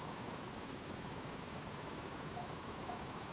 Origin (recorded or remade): remade